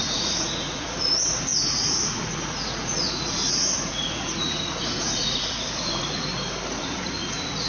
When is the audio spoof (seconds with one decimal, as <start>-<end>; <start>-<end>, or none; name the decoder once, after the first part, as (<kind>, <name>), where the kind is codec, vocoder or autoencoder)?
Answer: 0.0-6.3 (vocoder, Vocos); 6.8-7.7